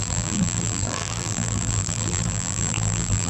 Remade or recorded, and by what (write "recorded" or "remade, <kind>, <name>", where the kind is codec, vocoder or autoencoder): remade, vocoder, BigVGAN v2